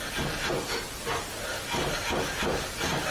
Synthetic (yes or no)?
no